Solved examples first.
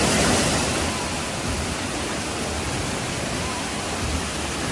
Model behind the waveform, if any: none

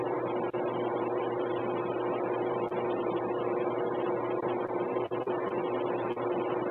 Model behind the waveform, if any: none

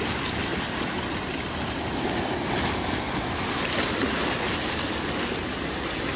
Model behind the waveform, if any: none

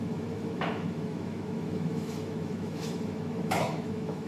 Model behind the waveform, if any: autoencoder, DAC-VAE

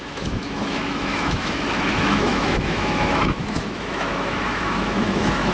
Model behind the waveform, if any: autoencoder, DAC-VAE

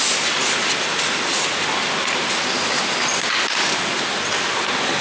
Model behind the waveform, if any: none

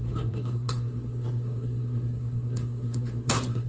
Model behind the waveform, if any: codec, SNAC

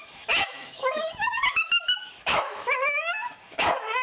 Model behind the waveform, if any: autoencoder, DAC-VAE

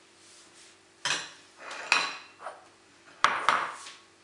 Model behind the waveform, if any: none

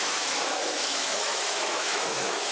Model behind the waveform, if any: autoencoder, DAC-VAE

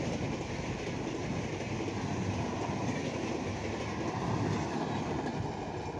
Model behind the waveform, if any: none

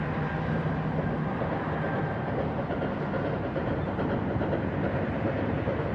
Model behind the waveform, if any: none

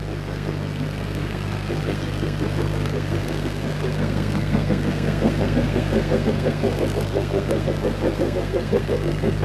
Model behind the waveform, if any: codec, SNAC